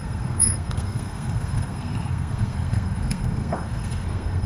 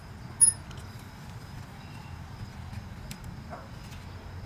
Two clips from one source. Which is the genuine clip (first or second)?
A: second